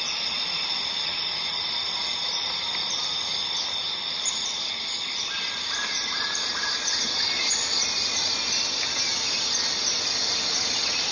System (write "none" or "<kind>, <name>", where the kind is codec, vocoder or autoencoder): none